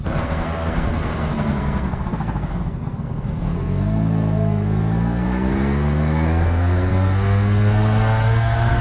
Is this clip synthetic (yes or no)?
yes